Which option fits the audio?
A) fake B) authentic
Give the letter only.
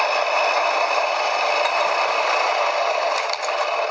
B